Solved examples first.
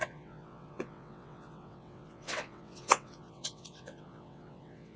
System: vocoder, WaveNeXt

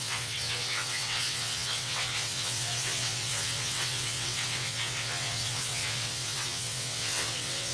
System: vocoder, WaveNeXt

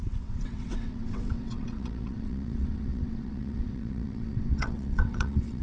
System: vocoder, WaveNeXt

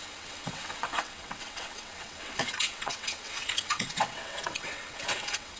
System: vocoder, WaveNeXt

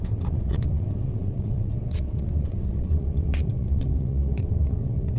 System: vocoder, WaveNeXt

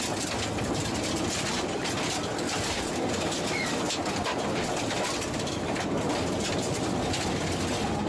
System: none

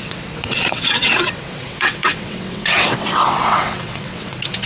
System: vocoder, WaveNeXt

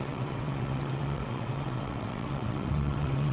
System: vocoder, WaveNeXt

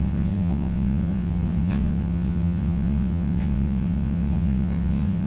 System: vocoder, WaveNeXt